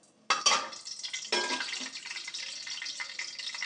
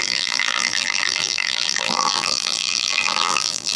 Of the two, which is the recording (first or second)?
first